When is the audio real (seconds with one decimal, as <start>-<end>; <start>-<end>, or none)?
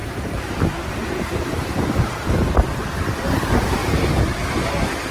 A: none